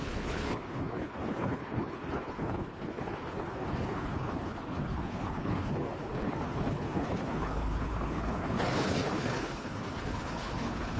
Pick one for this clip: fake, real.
fake